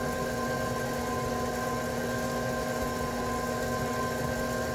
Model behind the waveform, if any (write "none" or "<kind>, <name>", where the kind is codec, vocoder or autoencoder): none